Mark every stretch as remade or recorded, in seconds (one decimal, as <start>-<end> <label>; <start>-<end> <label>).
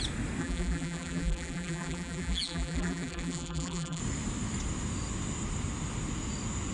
0.0-0.4 recorded; 0.4-4.0 remade; 4.0-6.7 recorded